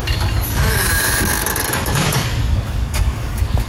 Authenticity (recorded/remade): remade